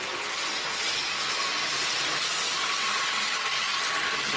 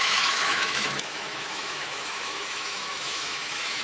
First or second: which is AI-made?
second